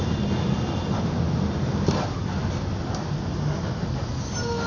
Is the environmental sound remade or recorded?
recorded